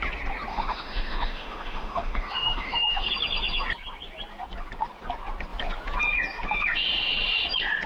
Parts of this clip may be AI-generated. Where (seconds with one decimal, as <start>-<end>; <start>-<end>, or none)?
0.5-3.1